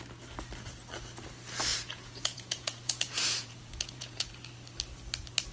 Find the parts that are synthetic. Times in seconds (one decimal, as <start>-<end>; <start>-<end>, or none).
1.7-4.3